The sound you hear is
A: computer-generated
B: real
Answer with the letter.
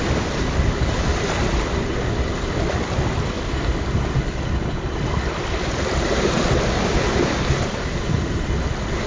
B